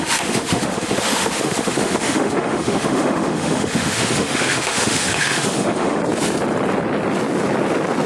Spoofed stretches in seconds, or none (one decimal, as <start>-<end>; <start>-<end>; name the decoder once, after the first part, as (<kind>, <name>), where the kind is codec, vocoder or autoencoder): 0.0-6.0 (autoencoder, DAC-VAE)